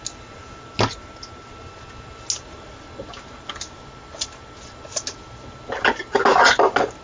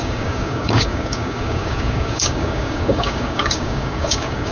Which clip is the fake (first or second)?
second